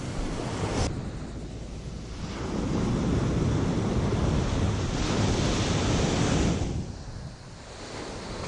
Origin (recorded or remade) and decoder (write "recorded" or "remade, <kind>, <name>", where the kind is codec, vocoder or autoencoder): recorded